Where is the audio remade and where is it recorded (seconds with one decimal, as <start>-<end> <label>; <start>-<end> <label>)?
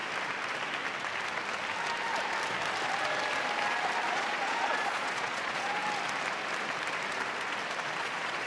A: 0.0-4.1 recorded; 4.1-5.8 remade; 5.8-8.0 recorded; 8.0-8.5 remade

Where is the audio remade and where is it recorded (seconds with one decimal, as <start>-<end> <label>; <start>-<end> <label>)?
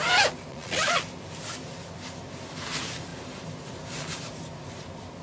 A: 0.0-0.5 recorded; 0.5-1.0 remade; 1.0-5.2 recorded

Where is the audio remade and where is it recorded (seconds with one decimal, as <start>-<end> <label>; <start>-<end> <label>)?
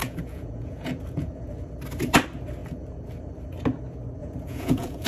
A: 0.0-1.5 remade; 1.5-4.2 recorded; 4.2-5.1 remade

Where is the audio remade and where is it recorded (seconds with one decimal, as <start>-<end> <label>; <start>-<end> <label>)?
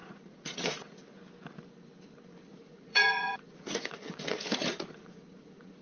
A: 0.0-1.0 remade; 1.0-2.5 recorded; 2.5-5.8 remade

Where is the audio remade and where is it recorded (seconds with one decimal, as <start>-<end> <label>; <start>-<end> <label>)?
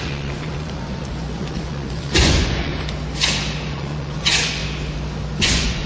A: 0.0-2.7 remade; 2.7-3.7 recorded; 3.7-4.6 remade; 4.6-5.4 recorded; 5.4-5.9 remade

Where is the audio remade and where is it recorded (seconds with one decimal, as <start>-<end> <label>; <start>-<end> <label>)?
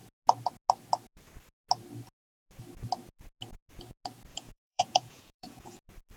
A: 0.0-4.3 recorded; 4.3-5.8 remade; 5.8-6.2 recorded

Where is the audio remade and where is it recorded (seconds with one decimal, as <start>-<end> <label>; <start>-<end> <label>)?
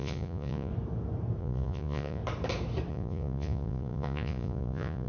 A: 0.0-0.7 remade; 0.7-1.4 recorded; 1.4-2.2 remade; 2.2-2.9 recorded; 2.9-5.1 remade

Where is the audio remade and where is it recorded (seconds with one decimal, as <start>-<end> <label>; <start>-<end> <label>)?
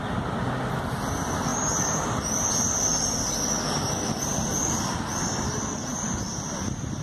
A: 0.0-7.0 recorded